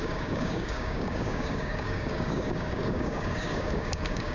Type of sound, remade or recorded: remade